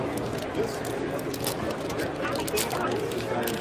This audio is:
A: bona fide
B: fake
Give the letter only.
A